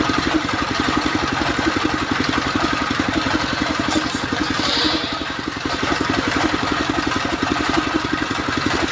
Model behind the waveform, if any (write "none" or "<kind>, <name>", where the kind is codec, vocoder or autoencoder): vocoder, BigVGAN v2